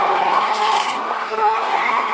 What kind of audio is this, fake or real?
fake